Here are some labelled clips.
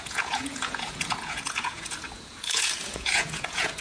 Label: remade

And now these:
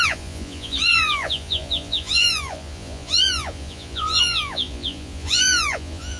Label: remade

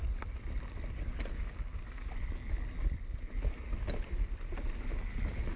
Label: recorded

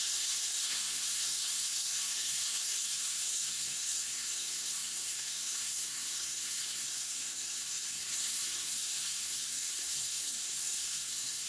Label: remade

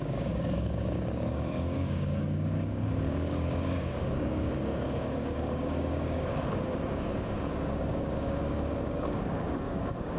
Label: remade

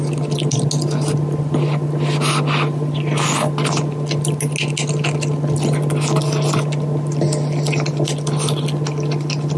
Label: recorded